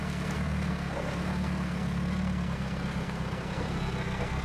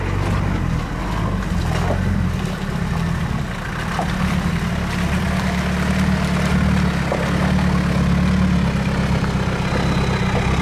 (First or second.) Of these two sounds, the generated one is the first